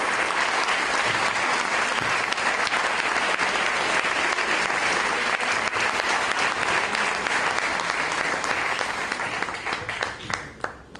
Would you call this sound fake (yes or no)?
no